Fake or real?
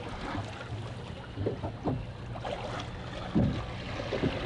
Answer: real